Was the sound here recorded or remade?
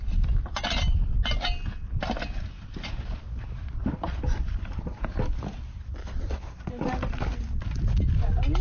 recorded